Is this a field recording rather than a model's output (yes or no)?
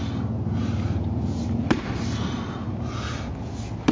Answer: yes